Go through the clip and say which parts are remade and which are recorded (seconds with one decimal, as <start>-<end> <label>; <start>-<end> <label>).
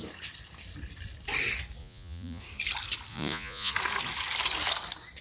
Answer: 0.0-1.8 recorded; 1.8-2.4 remade; 2.4-3.1 recorded; 3.1-3.7 remade; 3.7-5.2 recorded